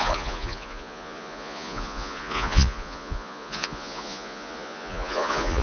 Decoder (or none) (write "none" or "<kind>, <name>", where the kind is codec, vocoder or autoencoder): vocoder, Vocos